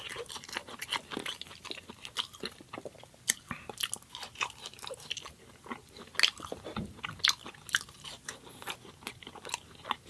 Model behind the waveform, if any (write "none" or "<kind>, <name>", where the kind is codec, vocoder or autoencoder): none